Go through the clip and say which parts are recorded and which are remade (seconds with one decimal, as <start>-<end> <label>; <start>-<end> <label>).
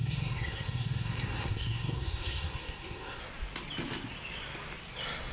0.0-3.2 remade; 3.2-5.3 recorded